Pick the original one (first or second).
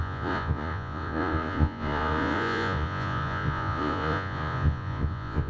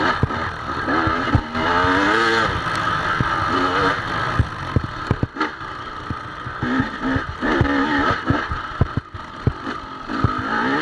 second